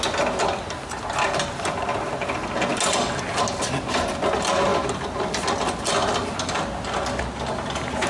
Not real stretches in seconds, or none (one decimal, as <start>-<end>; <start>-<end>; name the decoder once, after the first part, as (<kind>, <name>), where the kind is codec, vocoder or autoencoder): none